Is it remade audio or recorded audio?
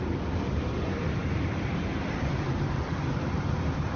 remade